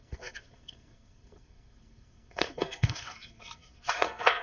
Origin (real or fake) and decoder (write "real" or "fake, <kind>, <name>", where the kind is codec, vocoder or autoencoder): fake, codec, SNAC